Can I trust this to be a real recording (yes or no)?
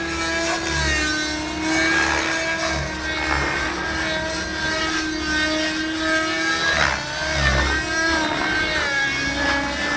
yes